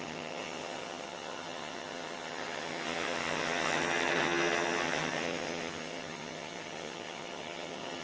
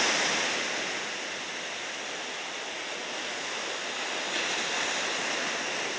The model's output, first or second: first